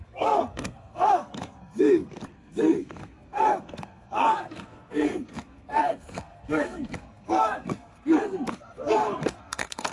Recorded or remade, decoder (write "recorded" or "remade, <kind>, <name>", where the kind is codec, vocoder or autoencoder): remade, codec, SNAC